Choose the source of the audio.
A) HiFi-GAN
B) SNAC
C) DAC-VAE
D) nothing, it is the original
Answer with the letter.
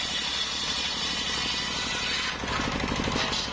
D